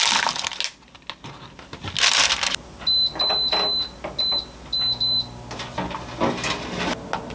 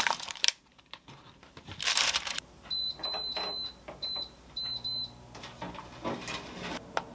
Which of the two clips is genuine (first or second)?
first